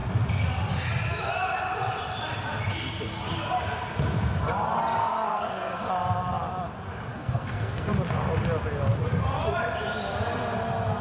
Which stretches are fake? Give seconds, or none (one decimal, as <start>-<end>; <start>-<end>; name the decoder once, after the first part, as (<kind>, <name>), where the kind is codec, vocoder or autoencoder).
5.0-5.9 (codec, SNAC); 7.1-7.9